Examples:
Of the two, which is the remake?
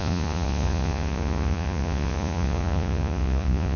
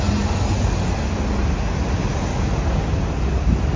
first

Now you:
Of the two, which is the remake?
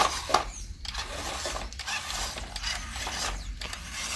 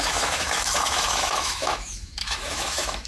second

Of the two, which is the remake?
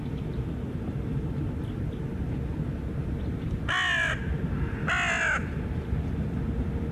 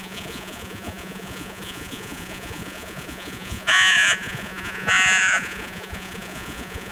second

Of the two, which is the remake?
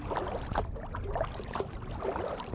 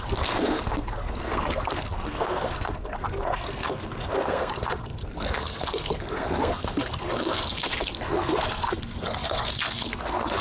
second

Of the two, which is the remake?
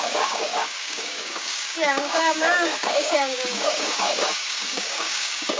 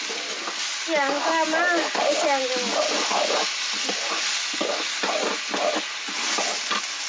first